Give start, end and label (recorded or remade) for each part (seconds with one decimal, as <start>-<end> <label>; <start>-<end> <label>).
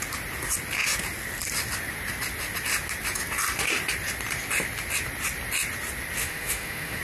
0.0-6.2 recorded; 6.2-7.0 remade